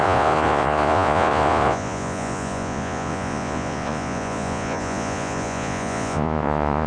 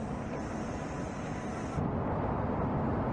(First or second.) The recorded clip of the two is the second